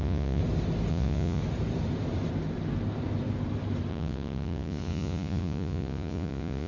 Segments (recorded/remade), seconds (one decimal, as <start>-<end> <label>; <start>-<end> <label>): 0.0-0.4 remade; 0.4-0.9 recorded; 0.9-1.4 remade; 1.4-3.9 recorded; 3.9-6.7 remade